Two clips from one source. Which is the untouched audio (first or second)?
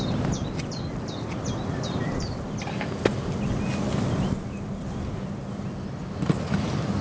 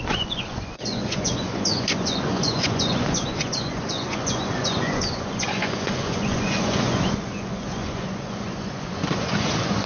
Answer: first